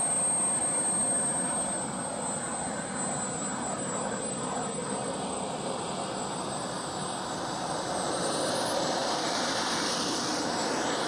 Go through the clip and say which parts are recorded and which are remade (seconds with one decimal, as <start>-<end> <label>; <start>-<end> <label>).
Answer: 0.0-4.8 recorded; 4.8-6.1 remade; 6.1-9.0 recorded; 9.0-10.4 remade; 10.4-11.1 recorded